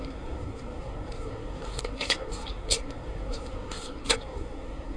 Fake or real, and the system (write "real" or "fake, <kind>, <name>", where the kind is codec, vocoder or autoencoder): fake, codec, SNAC